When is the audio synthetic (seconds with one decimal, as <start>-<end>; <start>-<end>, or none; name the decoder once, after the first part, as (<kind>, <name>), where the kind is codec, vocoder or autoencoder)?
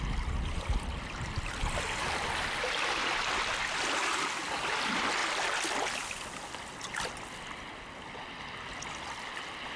none